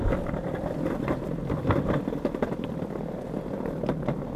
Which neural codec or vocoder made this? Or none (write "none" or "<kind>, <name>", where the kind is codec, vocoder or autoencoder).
none